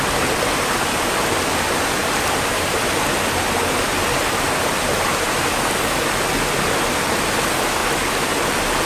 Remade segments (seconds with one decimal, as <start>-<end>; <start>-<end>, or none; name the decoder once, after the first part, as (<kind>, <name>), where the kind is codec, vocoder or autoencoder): none